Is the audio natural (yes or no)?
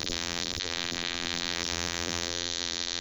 no